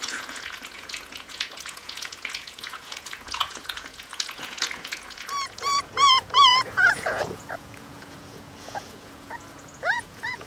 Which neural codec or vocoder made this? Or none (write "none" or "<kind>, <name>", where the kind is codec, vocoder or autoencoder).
vocoder, Vocos